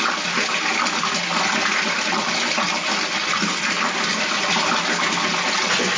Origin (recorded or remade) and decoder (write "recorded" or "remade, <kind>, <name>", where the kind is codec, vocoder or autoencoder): recorded